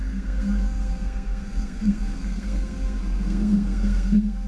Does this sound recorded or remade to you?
remade